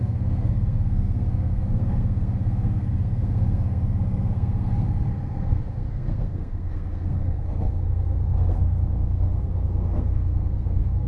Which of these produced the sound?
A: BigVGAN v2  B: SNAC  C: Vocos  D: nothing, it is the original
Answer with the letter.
B